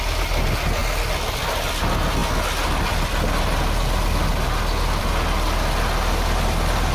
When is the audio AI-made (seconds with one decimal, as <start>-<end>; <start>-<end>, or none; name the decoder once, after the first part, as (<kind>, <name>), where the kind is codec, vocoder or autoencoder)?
none